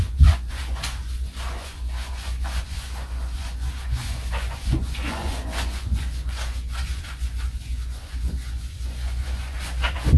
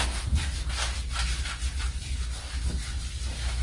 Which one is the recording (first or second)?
second